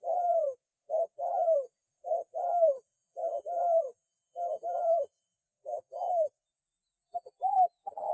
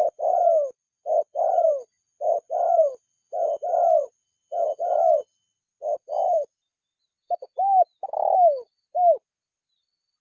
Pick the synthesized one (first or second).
first